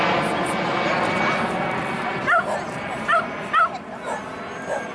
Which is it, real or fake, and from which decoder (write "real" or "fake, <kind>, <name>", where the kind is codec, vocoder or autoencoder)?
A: real